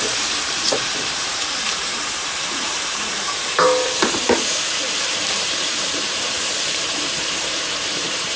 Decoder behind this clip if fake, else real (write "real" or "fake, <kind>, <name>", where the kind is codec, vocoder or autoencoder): fake, vocoder, BigVGAN v2